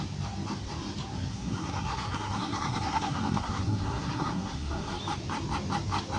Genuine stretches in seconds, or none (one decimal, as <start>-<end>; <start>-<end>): 0.0-1.3; 5.0-6.2